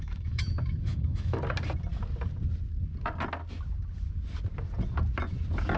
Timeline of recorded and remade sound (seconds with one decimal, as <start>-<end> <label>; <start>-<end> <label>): 0.0-1.4 remade; 1.4-5.8 recorded